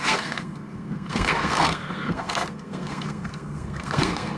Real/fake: fake